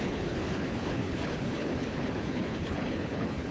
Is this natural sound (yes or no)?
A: no